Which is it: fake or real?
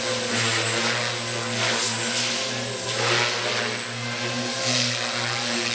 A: real